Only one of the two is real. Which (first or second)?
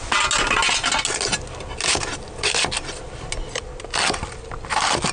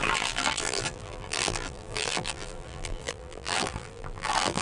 first